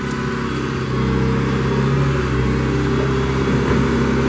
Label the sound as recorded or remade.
recorded